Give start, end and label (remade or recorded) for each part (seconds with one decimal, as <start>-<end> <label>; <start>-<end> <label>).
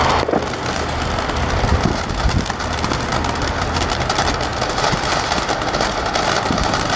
0.0-7.0 recorded